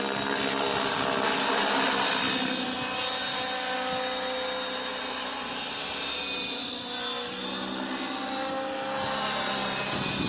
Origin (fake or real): real